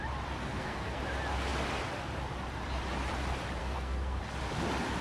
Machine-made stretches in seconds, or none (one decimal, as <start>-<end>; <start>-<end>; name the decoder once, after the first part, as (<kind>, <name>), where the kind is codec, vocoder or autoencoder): 0.4-1.0 (codec, SNAC); 3.6-4.2